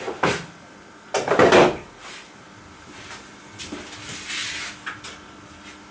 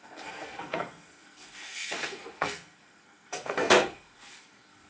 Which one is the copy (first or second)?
second